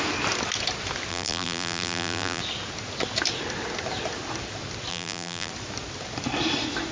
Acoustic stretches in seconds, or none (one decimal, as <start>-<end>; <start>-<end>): 0.0-1.1; 2.4-4.9; 5.5-6.9